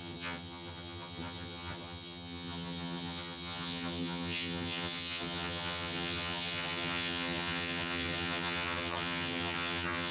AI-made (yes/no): yes